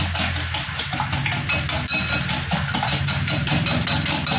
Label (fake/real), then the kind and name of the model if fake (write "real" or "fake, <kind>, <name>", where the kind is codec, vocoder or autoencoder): real